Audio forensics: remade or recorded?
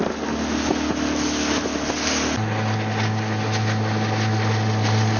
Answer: recorded